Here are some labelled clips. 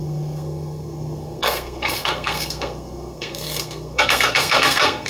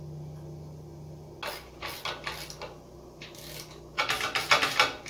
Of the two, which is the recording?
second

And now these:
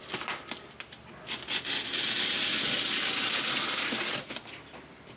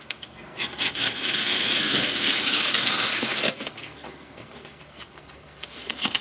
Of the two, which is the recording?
first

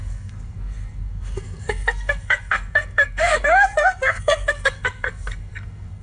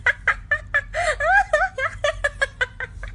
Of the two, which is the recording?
second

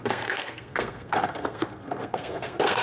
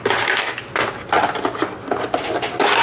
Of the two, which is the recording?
second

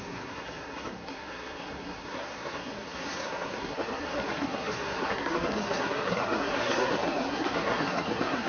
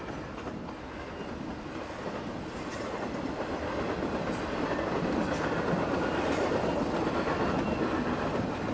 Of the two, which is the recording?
second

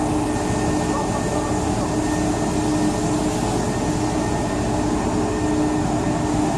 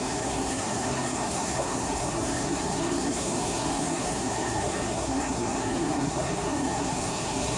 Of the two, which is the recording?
first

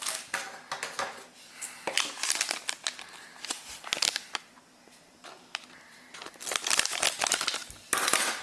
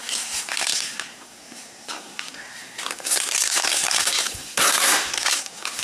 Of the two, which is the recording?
first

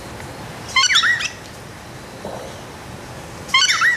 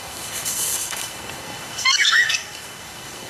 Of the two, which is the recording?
first